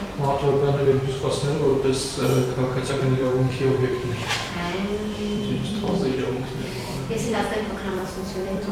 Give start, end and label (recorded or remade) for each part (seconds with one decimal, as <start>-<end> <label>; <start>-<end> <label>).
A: 0.0-8.7 remade